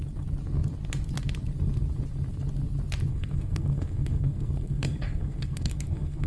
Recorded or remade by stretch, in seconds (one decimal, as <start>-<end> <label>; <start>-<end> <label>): 0.0-3.1 recorded; 3.1-6.3 remade